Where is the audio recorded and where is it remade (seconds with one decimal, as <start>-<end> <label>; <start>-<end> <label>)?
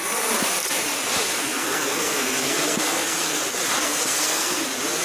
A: 0.0-1.3 recorded; 1.3-3.4 remade; 3.4-3.8 recorded; 3.8-4.6 remade; 4.6-5.0 recorded